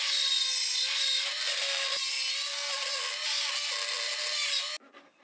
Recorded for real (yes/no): yes